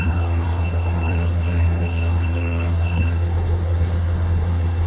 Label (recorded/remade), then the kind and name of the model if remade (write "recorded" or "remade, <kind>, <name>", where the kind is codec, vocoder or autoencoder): remade, codec, SNAC